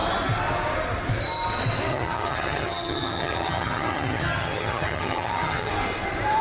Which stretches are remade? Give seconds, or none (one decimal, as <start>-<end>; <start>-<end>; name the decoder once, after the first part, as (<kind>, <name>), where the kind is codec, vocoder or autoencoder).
1.9-5.7 (vocoder, HiFi-GAN)